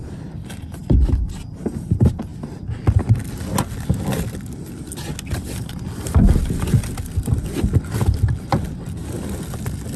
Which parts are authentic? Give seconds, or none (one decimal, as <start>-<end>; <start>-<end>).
0.8-1.3; 2.3-5.2